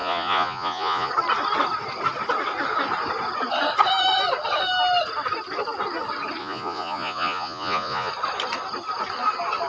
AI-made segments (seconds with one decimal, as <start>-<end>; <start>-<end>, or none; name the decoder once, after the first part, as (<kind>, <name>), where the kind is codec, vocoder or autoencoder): 0.0-1.1 (vocoder, Vocos); 6.4-8.1